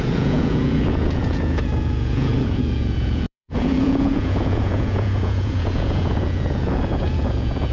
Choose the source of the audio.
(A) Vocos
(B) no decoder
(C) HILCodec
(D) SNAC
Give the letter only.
A